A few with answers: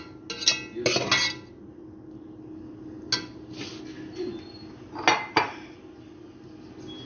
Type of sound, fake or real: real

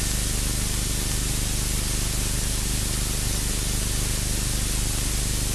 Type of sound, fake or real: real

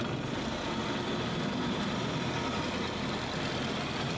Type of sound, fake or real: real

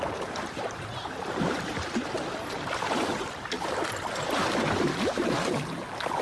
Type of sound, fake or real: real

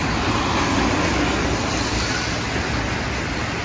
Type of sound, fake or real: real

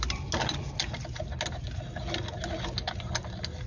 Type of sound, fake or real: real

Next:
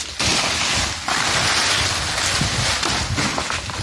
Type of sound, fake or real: real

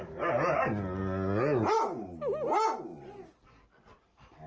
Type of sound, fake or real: real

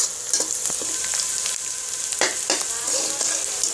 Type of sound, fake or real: real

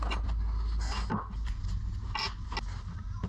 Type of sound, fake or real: real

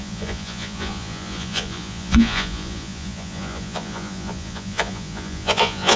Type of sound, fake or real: fake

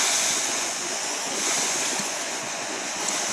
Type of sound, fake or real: fake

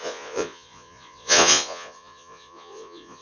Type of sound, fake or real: fake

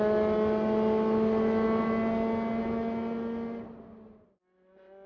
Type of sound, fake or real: real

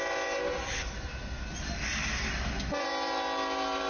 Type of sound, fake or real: real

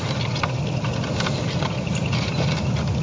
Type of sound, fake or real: real